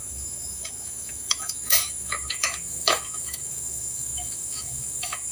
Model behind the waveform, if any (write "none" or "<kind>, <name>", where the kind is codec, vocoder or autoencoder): autoencoder, DAC-VAE